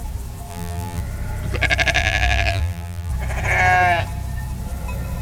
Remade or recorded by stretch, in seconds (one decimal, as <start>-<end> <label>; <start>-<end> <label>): 0.0-0.5 recorded; 0.5-1.0 remade; 1.0-2.0 recorded; 2.0-3.1 remade; 3.1-5.2 recorded